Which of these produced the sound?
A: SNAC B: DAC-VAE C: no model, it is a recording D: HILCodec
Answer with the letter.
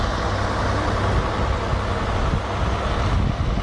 C